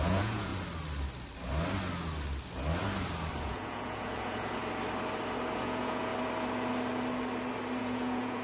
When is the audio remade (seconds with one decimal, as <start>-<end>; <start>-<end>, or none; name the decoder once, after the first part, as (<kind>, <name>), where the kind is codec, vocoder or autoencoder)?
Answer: 0.0-0.5 (vocoder, Vocos); 3.4-4.6; 5.6-6.1; 7.8-8.4